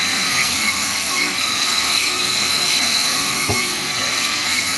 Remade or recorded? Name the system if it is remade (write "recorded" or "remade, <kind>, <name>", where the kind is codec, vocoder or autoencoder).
remade, codec, SNAC